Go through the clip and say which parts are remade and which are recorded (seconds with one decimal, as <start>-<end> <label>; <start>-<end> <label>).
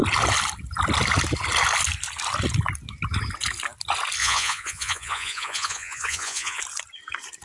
0.0-4.2 recorded; 4.2-6.6 remade; 6.6-7.4 recorded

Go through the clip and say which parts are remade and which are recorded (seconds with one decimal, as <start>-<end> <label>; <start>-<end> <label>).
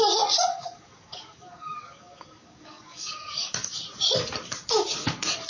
0.0-0.5 recorded; 0.5-3.8 remade; 3.8-5.5 recorded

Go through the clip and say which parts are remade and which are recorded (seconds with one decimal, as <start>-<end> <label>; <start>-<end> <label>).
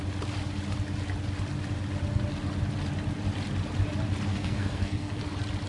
0.0-4.3 recorded; 4.3-5.2 remade; 5.2-5.7 recorded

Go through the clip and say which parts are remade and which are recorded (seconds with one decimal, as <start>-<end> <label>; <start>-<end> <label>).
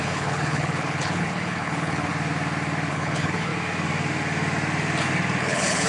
0.0-2.1 remade; 2.1-2.9 recorded; 2.9-3.5 remade; 3.5-5.4 recorded; 5.4-5.9 remade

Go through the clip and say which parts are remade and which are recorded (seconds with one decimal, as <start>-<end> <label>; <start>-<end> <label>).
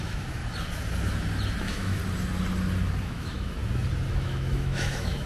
0.0-0.4 remade; 0.4-1.6 recorded; 1.6-2.0 remade; 2.0-3.0 recorded; 3.0-3.6 remade; 3.6-4.1 recorded; 4.1-5.3 remade